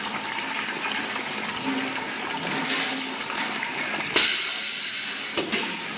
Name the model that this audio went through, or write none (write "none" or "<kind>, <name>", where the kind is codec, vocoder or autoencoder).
none